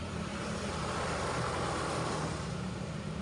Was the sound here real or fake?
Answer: fake